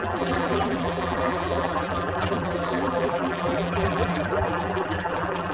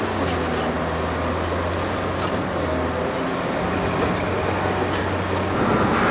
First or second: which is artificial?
first